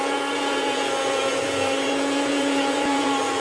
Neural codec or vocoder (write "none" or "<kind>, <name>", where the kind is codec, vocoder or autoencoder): vocoder, Vocos